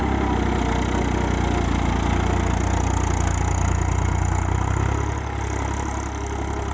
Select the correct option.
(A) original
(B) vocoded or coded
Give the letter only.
A